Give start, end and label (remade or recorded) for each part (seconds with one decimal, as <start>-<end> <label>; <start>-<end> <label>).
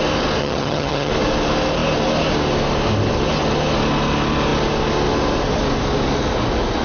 0.0-0.4 recorded; 0.4-1.1 remade; 1.1-6.8 recorded